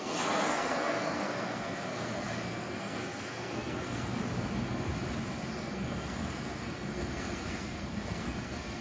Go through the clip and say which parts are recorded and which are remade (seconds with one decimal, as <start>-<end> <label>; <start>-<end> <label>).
0.0-4.2 remade; 4.2-5.5 recorded; 5.5-8.8 remade